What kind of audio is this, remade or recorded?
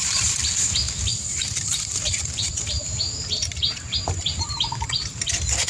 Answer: remade